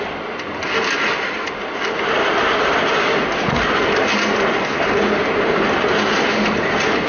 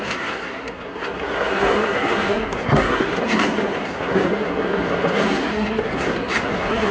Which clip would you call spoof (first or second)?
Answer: second